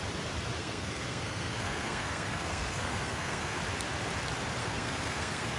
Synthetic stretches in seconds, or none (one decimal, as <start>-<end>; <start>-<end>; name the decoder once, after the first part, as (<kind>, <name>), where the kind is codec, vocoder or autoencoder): 0.6-3.6 (codec, SNAC); 4.6-5.6